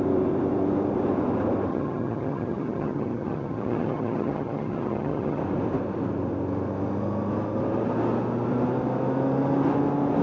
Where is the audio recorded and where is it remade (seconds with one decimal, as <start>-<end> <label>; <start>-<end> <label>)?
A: 0.0-1.7 recorded; 1.7-5.4 remade; 5.4-10.2 recorded